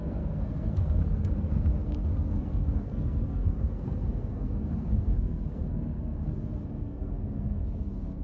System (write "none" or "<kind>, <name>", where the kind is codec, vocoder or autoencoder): codec, SNAC